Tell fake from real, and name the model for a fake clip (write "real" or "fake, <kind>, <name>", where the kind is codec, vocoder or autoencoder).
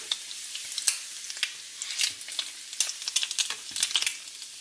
real